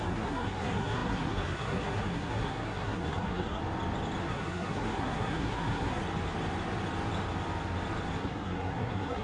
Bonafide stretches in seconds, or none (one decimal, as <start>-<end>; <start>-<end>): 3.6-4.2; 6.0-8.2